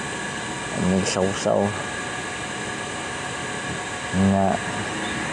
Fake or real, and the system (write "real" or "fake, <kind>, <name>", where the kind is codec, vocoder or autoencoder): real